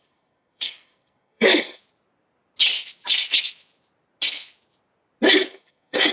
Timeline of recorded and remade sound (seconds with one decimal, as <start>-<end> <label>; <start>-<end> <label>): 0.0-1.8 remade; 1.8-5.5 recorded; 5.5-6.1 remade